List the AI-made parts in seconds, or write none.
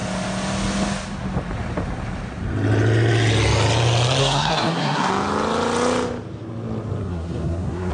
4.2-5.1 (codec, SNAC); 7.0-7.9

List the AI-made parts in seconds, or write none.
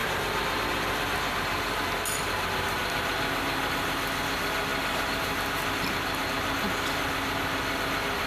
0.0-0.6 (vocoder, BigVGAN v2); 2.2-3.1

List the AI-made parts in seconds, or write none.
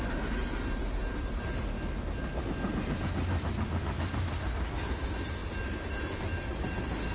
none